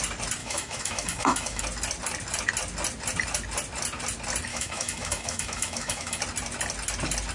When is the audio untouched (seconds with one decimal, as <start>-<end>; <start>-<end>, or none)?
0.0-0.4; 1.6-4.5; 6.2-7.3